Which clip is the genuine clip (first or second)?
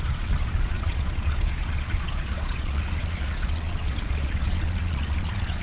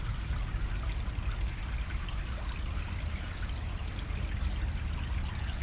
second